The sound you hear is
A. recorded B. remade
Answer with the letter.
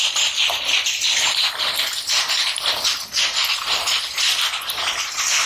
A